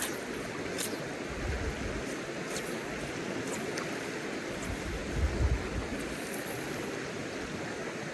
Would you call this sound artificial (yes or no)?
no